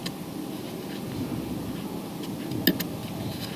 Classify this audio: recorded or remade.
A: recorded